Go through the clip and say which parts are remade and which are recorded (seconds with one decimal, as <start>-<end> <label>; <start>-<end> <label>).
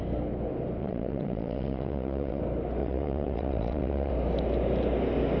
0.0-0.8 recorded; 0.8-2.4 remade; 2.4-2.8 recorded; 2.8-4.1 remade; 4.1-5.4 recorded